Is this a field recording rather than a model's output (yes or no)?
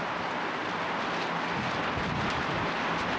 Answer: yes